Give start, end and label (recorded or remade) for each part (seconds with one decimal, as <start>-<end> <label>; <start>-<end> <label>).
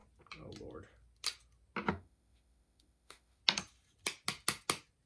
0.0-1.9 recorded; 1.9-3.4 remade; 3.4-5.1 recorded